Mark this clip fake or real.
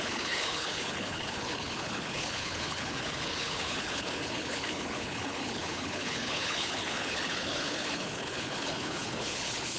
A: fake